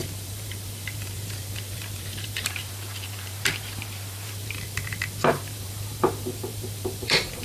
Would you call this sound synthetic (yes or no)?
yes